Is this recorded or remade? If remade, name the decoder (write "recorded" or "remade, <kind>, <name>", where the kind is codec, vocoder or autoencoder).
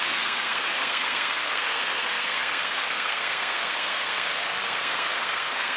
remade, codec, SNAC